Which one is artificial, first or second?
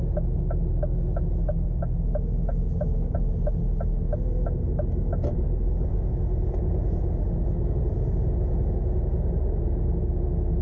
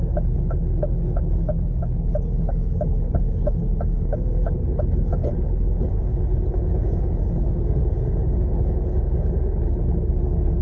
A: second